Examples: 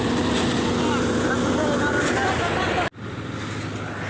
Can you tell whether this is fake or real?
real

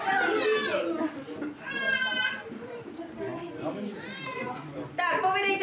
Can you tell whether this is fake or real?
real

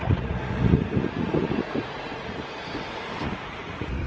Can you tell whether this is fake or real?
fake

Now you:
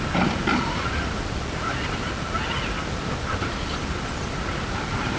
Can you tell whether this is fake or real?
real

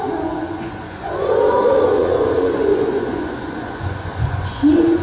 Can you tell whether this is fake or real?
fake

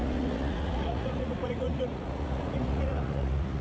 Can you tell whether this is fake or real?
fake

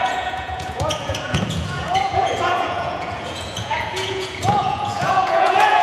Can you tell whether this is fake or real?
fake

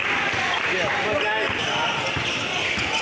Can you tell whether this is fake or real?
real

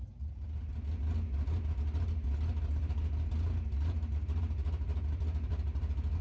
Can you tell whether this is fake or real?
real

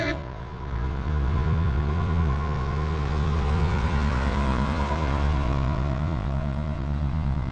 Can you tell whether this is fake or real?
fake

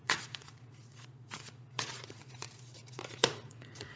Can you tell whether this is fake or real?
fake